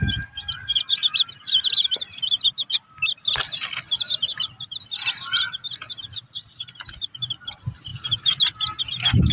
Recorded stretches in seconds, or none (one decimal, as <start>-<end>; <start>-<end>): 0.0-9.3